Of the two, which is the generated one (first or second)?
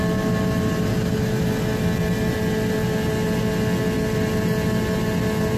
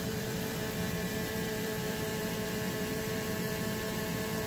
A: second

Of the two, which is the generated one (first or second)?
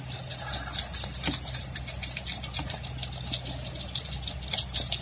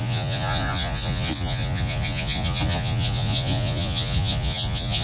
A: second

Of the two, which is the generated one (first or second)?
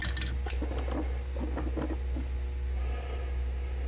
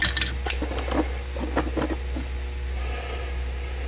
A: second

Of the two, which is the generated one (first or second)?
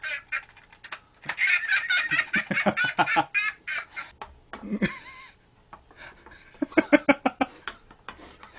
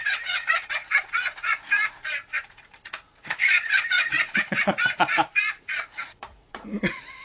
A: second